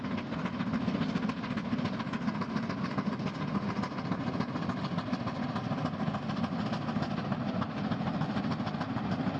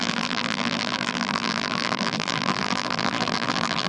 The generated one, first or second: second